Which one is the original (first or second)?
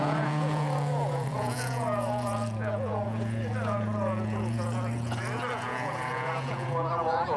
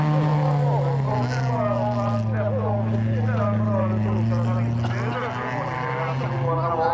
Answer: second